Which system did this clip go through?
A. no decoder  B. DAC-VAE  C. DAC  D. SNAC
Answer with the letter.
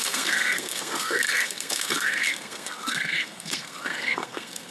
D